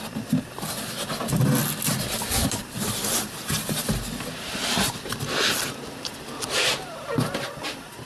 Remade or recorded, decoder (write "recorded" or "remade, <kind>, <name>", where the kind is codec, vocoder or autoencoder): recorded